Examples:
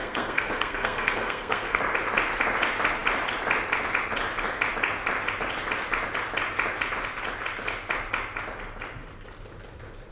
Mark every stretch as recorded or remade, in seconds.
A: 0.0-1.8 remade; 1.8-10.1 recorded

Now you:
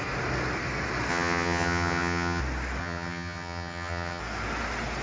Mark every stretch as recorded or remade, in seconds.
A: 0.0-1.1 recorded; 1.1-2.4 remade; 2.4-2.8 recorded; 2.8-4.2 remade; 4.2-5.0 recorded

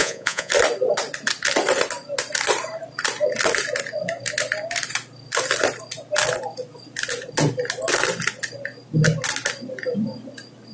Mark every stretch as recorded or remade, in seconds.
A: 0.0-0.5 remade; 0.5-10.7 recorded